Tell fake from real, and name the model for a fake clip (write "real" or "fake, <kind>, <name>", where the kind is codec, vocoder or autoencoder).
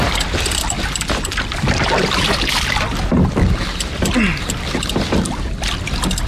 real